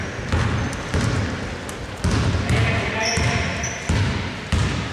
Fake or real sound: real